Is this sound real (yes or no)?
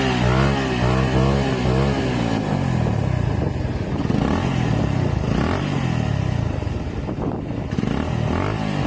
yes